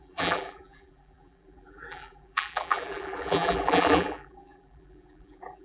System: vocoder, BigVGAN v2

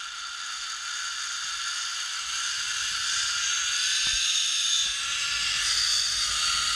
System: none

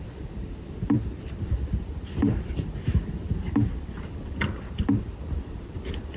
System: vocoder, BigVGAN v2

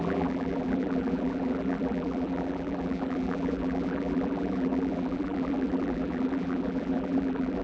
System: vocoder, BigVGAN v2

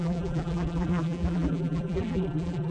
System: vocoder, BigVGAN v2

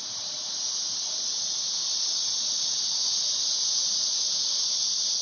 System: vocoder, BigVGAN v2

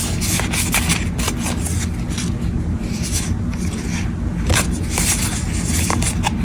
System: none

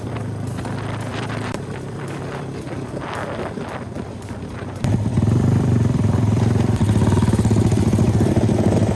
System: vocoder, BigVGAN v2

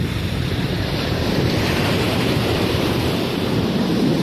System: vocoder, BigVGAN v2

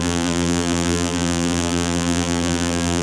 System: vocoder, BigVGAN v2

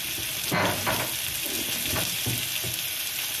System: none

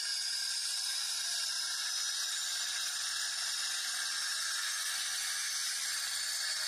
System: none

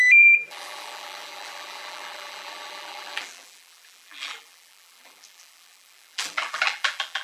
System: vocoder, BigVGAN v2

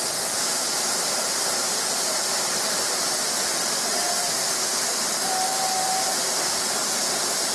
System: none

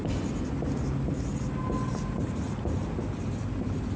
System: none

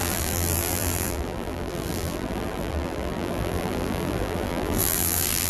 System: vocoder, BigVGAN v2